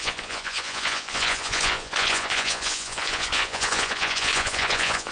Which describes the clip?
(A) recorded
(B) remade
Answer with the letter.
B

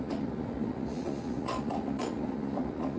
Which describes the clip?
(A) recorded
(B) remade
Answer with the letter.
B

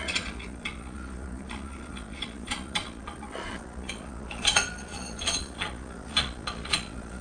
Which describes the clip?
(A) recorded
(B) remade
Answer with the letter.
B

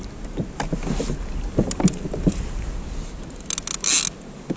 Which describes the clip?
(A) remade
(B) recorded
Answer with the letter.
B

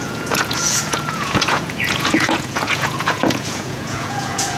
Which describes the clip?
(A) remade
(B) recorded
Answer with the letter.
A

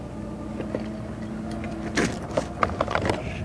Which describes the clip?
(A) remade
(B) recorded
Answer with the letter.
B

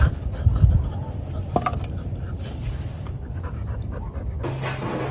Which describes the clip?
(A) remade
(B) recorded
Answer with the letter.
B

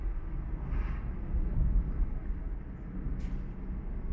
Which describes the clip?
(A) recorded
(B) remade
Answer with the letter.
A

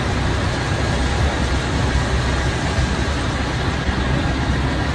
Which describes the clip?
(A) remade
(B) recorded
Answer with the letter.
B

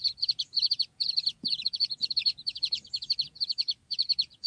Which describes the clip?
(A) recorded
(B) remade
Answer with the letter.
B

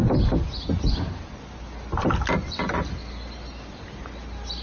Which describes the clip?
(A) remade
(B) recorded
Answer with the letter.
B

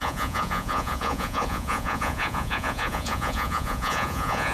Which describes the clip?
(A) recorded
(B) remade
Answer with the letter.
B